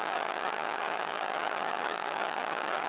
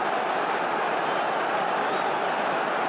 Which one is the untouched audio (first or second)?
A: second